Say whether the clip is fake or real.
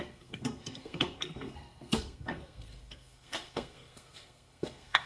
fake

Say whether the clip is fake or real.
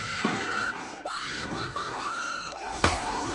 fake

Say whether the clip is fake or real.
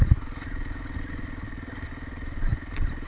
real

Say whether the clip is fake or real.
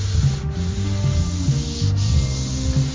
real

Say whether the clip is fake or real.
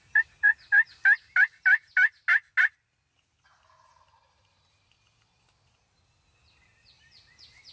real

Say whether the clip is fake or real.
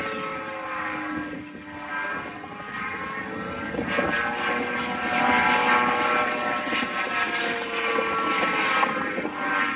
real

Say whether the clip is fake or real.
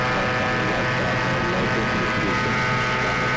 real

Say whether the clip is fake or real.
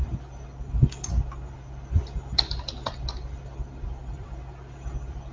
real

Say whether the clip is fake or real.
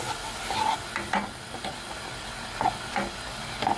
real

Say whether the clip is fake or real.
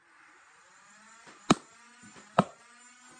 real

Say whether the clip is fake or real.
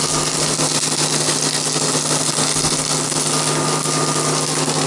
real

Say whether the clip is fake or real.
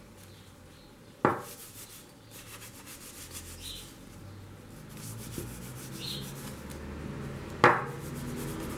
real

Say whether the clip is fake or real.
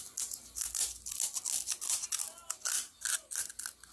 real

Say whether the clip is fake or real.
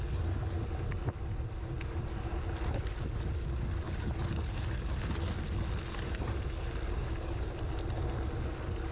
real